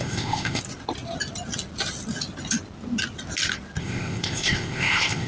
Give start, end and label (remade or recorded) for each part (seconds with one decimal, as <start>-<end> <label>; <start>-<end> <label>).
0.0-0.6 remade; 0.6-3.8 recorded; 3.8-5.3 remade